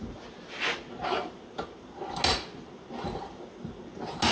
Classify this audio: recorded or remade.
recorded